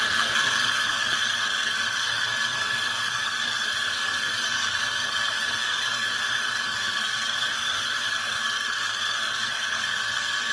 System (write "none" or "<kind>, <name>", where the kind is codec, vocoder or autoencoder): codec, SNAC